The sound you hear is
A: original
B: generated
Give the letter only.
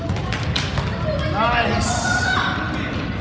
A